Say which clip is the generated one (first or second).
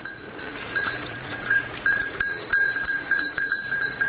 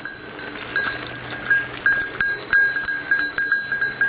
first